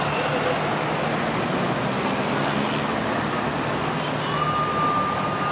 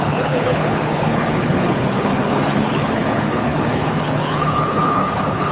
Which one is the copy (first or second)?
second